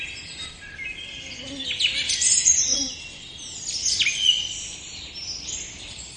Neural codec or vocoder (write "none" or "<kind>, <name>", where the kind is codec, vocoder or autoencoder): none